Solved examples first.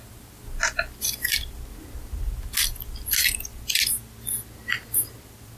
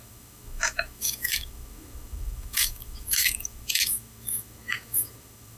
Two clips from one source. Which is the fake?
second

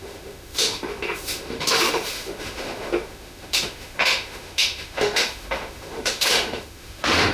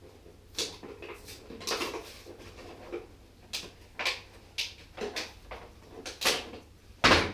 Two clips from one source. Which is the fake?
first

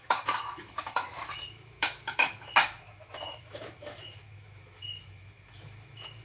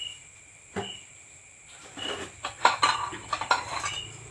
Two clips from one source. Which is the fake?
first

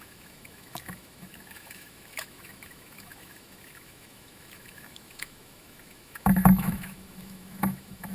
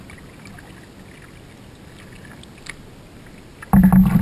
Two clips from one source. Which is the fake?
first